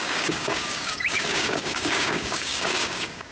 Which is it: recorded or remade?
remade